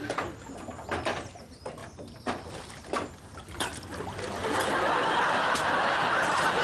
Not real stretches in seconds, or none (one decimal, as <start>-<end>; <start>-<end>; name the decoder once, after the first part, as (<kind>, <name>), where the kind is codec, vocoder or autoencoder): none